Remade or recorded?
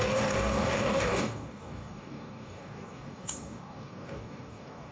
remade